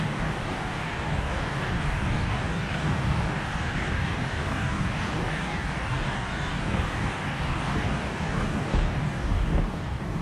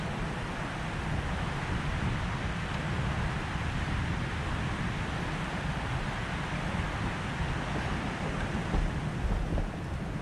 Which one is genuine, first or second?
second